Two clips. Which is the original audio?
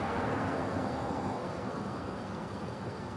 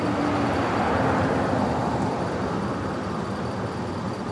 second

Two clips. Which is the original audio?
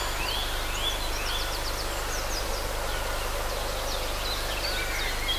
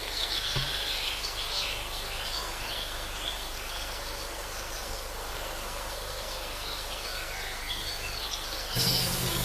first